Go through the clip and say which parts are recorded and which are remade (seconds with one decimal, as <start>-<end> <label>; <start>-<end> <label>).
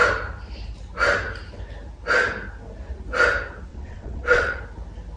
0.0-3.7 recorded; 3.7-4.6 remade; 4.6-5.2 recorded